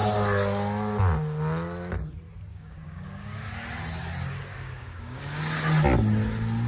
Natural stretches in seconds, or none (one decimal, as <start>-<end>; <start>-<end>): 0.0-2.5; 3.5-4.5; 5.4-6.7